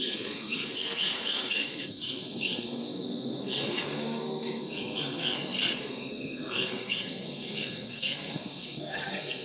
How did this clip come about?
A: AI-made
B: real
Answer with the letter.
A